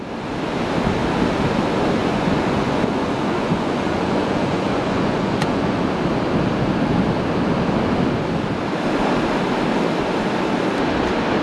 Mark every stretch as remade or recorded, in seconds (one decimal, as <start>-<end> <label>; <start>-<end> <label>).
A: 0.0-2.0 recorded; 2.0-5.9 remade; 5.9-11.4 recorded